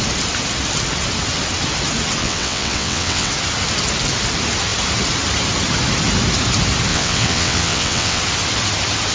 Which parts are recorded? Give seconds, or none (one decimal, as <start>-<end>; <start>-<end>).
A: 0.0-2.2; 3.3-6.9; 8.2-9.1